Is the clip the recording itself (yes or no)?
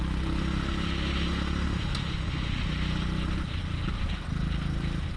yes